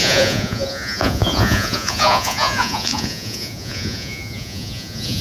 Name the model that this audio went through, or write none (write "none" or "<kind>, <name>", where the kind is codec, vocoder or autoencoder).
vocoder, Vocos